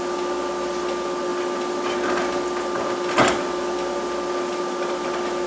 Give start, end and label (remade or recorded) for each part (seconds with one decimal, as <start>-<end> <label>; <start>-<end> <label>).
0.0-5.5 recorded